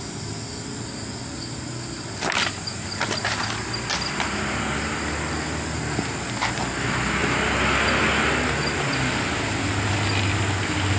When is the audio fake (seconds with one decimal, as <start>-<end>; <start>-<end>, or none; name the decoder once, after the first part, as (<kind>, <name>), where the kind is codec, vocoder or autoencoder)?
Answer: none